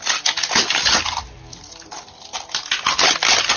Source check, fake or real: real